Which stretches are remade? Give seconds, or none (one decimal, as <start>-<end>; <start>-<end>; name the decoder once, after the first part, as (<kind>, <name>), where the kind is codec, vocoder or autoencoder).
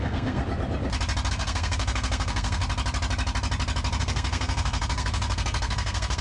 0.0-0.4 (codec, SNAC); 1.3-2.6; 4.0-6.2